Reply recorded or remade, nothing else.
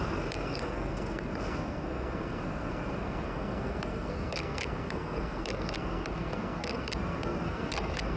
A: remade